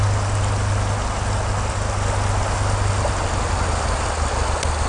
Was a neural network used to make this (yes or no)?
no